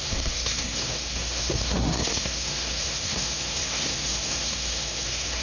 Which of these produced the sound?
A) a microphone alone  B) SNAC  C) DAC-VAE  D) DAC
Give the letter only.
B